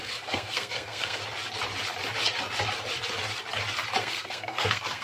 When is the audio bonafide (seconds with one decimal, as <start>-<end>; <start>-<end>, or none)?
1.2-4.0